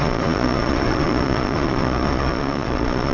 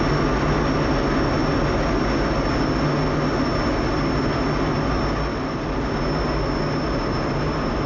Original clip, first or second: second